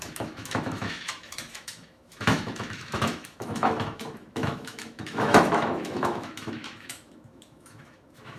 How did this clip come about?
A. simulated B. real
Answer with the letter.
A